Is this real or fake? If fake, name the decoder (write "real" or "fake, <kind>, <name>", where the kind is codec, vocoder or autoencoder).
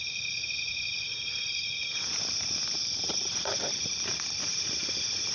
real